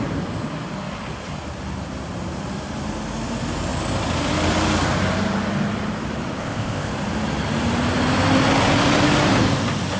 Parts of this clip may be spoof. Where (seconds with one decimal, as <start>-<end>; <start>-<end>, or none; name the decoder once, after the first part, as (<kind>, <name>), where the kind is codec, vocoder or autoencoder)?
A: 6.4-6.9 (codec, ZipCodec)